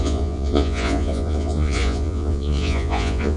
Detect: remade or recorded remade